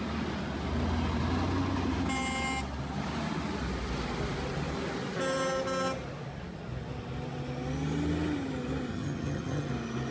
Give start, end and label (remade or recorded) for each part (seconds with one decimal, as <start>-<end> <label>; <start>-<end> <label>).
0.0-8.9 recorded; 8.9-9.7 remade; 9.7-10.1 recorded

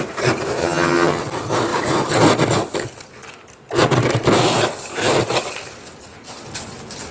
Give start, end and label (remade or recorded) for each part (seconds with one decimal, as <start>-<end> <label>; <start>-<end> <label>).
0.0-0.6 recorded; 0.6-1.2 remade; 1.2-7.1 recorded

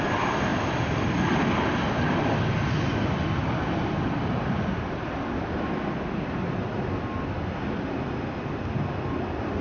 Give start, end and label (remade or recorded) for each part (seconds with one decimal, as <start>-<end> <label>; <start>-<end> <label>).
0.0-9.6 recorded

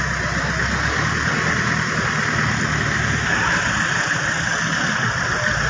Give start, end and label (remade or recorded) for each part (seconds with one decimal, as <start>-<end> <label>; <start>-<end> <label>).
0.0-5.7 recorded